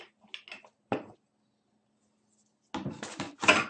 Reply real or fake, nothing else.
real